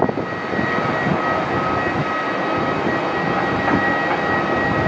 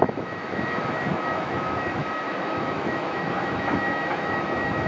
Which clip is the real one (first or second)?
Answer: first